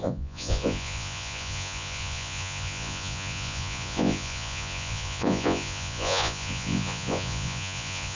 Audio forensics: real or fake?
fake